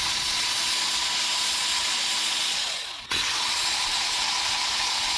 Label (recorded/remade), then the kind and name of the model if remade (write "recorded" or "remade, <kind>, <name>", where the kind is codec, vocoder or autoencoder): remade, vocoder, Vocos